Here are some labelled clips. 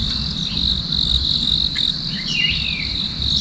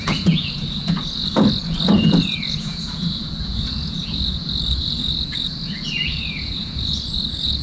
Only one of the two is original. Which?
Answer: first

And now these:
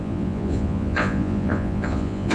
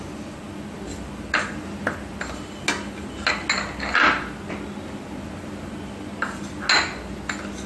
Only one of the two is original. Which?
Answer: second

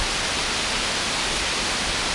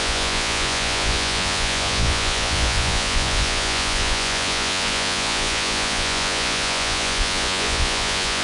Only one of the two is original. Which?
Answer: first